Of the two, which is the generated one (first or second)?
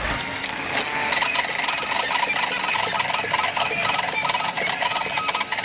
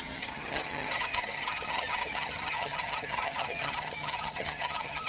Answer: second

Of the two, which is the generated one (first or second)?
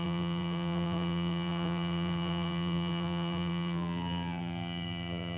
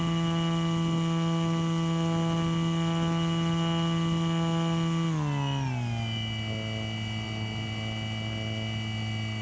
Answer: first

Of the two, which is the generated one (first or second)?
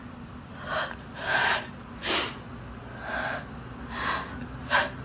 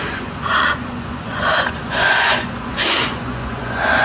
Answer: second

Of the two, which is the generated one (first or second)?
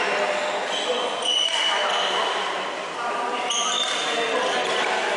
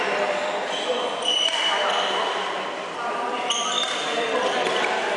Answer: second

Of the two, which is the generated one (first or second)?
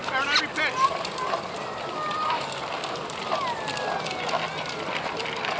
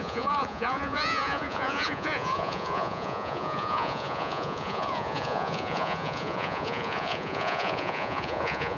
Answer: second